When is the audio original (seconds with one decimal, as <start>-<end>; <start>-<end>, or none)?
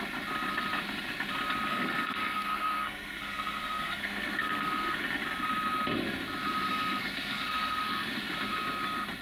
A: 0.0-1.7; 5.0-6.7; 8.2-9.2